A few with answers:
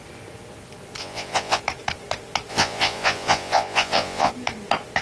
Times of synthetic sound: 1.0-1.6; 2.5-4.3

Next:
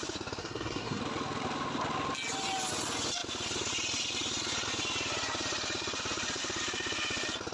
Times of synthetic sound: 0.4-1.0

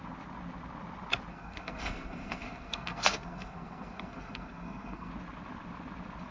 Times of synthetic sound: 1.3-5.1